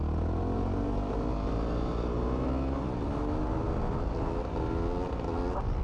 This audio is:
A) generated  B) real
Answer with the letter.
B